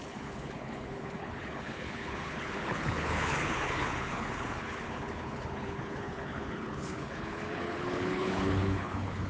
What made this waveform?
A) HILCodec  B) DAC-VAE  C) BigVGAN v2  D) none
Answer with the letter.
A